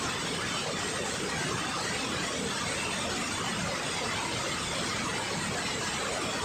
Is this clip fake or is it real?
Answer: real